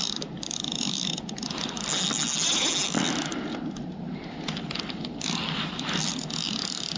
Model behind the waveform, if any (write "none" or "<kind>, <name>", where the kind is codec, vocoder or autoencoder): none